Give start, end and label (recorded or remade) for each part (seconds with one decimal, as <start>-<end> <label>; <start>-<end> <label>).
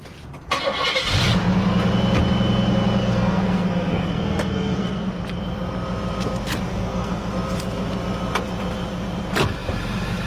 0.0-3.0 recorded; 3.0-5.1 remade; 5.1-6.7 recorded; 6.7-7.3 remade; 7.3-10.3 recorded